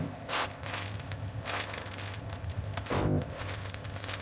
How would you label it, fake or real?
fake